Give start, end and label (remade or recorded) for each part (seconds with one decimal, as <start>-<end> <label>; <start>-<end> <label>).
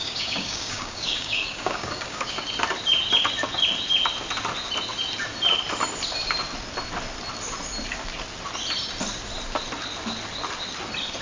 0.0-2.4 remade; 2.4-11.2 recorded